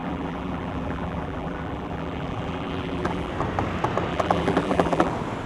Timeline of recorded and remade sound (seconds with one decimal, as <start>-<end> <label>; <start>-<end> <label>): 0.0-3.3 remade; 3.3-4.1 recorded; 4.1-5.1 remade; 5.1-5.5 recorded

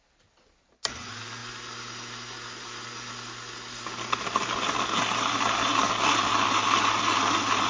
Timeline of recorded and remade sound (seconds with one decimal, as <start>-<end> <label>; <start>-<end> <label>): 0.0-7.7 recorded